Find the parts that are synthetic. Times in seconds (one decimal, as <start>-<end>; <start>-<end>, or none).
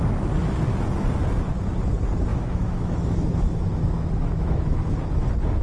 2.3-4.9